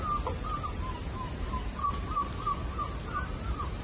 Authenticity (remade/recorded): recorded